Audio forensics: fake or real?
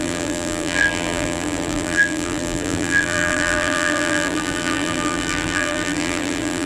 fake